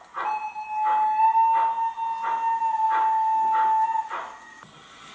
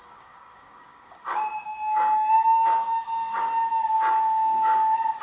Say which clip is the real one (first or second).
first